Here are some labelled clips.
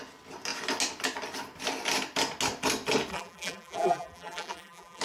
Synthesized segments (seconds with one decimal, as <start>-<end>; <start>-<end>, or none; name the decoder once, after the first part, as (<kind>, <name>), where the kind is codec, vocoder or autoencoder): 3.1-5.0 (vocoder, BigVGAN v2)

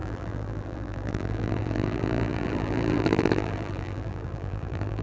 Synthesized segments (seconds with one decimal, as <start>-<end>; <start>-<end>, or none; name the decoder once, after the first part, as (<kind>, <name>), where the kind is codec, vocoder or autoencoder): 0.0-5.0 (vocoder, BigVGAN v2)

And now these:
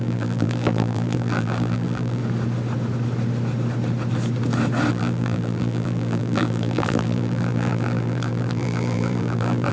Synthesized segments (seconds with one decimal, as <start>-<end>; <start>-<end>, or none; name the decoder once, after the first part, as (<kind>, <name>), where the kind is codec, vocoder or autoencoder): 0.0-2.2 (vocoder, BigVGAN v2); 4.9-9.7

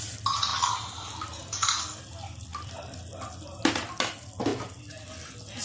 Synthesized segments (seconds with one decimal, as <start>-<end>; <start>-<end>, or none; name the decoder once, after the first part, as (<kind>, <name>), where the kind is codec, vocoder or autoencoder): 2.5-3.0 (vocoder, BigVGAN v2); 4.5-5.1

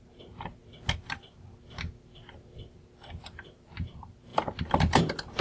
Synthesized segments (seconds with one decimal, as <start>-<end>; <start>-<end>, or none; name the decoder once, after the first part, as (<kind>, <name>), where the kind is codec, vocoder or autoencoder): 0.0-0.6 (vocoder, BigVGAN v2); 3.2-5.4

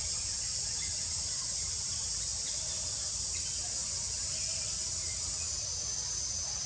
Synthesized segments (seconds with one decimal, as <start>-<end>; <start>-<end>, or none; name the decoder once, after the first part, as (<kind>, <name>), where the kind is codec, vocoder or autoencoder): 2.3-3.3 (vocoder, BigVGAN v2); 3.8-4.4

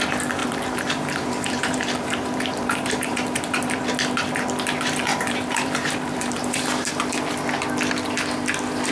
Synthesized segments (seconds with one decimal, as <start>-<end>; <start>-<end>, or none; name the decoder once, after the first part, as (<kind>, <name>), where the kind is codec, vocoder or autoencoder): 0.4-3.9 (vocoder, BigVGAN v2); 5.1-6.9

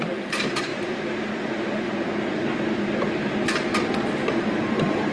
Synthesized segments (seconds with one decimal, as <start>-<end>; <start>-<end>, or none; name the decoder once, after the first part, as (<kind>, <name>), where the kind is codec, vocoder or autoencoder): 0.0-0.7 (vocoder, BigVGAN v2); 3.8-5.1